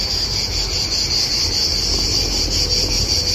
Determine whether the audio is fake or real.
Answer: fake